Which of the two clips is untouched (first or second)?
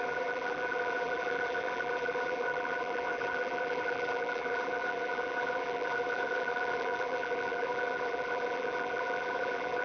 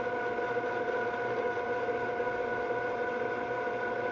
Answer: second